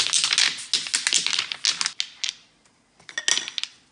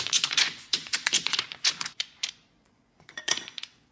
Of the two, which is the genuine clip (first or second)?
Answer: first